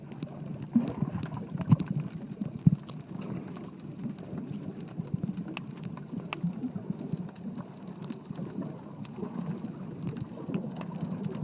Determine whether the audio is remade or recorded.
recorded